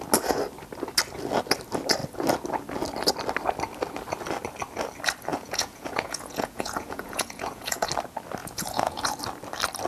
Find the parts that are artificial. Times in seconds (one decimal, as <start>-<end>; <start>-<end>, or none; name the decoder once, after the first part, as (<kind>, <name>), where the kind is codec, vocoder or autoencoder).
5.3-7.9 (vocoder, Vocos); 8.4-9.1